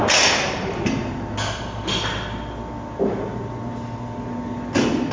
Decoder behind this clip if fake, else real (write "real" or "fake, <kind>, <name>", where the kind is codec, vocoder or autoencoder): real